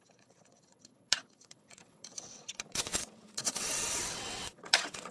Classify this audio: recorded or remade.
remade